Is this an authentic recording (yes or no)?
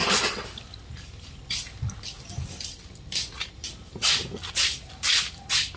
yes